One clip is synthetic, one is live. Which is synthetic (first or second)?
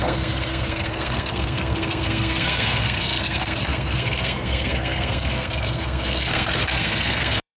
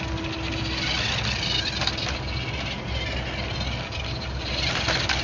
first